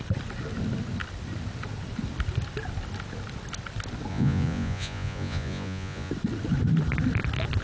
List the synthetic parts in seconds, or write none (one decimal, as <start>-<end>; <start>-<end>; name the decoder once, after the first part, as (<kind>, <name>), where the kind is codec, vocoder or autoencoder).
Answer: 4.1-6.1 (vocoder, Vocos)